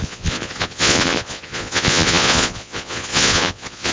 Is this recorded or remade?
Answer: remade